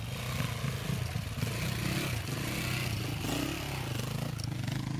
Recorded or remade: recorded